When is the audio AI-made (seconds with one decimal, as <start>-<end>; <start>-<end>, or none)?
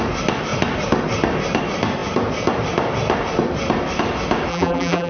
4.5-5.1